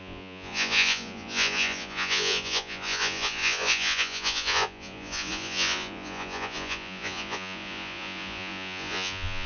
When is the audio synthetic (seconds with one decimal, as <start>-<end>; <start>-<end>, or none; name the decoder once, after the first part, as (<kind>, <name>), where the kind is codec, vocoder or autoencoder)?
0.0-9.5 (vocoder, Vocos)